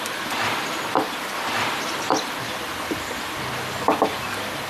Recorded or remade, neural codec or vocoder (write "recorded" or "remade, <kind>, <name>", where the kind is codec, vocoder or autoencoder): recorded